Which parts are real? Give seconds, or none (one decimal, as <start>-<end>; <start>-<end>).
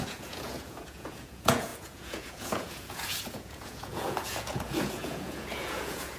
none